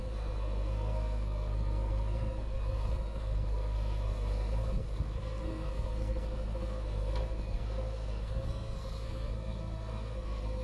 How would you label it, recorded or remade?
remade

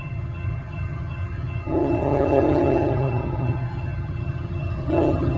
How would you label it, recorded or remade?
remade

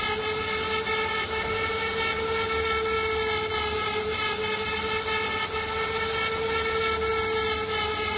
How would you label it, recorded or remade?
recorded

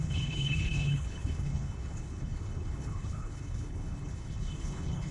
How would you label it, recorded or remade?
remade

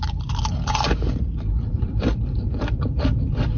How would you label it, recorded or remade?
remade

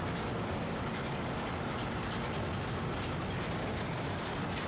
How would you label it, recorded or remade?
recorded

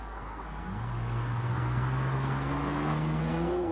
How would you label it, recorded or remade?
remade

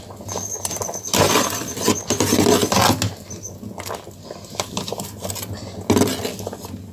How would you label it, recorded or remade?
recorded